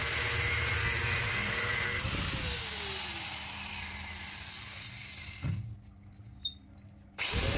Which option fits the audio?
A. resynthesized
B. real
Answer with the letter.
B